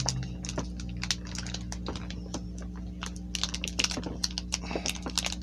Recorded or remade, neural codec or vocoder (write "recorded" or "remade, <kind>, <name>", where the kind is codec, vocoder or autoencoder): recorded